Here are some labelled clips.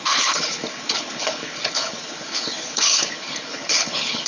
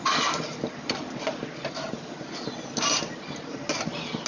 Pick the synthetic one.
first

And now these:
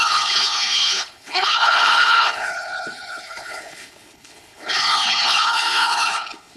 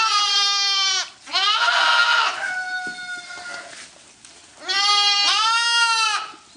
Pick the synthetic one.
first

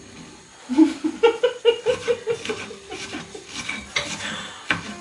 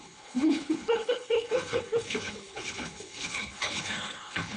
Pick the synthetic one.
second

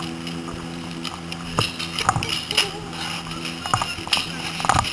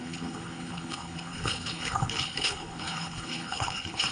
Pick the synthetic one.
second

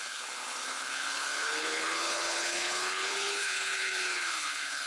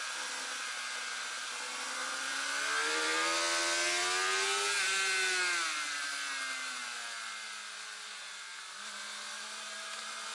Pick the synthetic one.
first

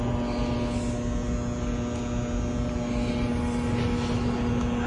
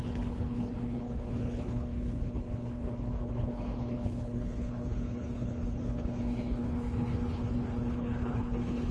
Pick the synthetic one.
second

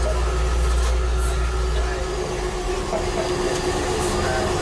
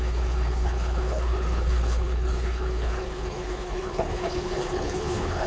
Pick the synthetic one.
second